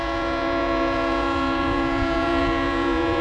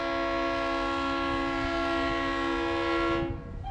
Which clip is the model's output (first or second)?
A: first